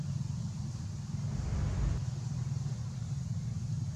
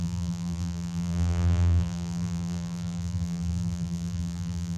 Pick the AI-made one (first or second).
second